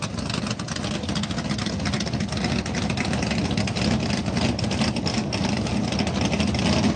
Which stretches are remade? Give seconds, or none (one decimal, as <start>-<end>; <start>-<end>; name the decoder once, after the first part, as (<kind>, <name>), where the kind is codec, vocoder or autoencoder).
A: 5.1-5.7 (codec, DAC)